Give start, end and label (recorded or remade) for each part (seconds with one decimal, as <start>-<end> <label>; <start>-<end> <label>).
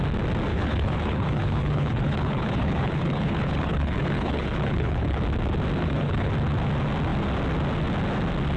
0.0-0.5 recorded; 0.5-5.2 remade; 5.2-5.8 recorded; 5.8-6.3 remade; 6.3-8.6 recorded